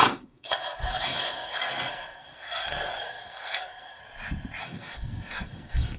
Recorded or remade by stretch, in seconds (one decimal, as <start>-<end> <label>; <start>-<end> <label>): 0.0-4.0 remade; 4.0-4.6 recorded; 4.6-6.0 remade